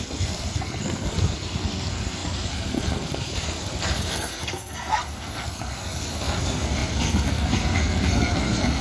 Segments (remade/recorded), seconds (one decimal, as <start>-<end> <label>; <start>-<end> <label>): 0.0-8.8 remade